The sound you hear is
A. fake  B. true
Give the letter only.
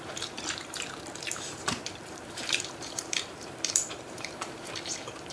A